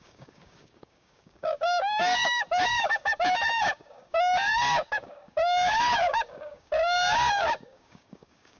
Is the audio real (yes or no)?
no